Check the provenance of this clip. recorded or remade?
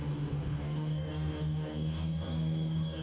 remade